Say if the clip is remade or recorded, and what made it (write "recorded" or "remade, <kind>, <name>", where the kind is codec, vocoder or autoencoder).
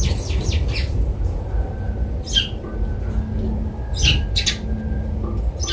recorded